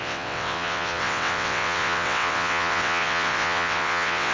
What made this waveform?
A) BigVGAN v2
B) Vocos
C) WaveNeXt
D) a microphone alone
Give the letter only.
C